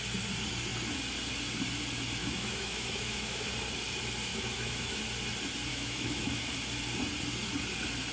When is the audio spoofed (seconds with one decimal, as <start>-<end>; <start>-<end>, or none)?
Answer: 2.2-3.5; 4.3-5.0; 5.7-6.4